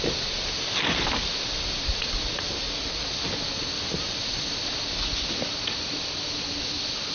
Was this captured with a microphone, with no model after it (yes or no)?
yes